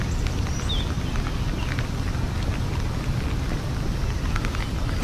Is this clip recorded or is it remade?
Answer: recorded